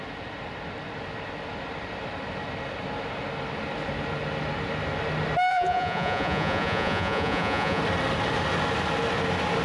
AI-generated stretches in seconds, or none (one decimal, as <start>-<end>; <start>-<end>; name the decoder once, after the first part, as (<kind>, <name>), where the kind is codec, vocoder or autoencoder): 5.5-7.8 (vocoder, Vocos)